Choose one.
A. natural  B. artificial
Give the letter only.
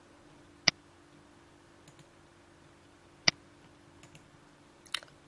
A